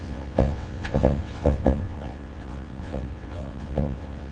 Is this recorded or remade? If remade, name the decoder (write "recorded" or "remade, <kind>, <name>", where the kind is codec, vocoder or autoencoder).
remade, vocoder, WaveNeXt